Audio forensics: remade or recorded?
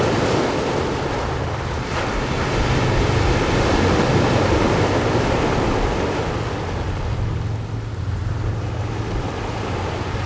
recorded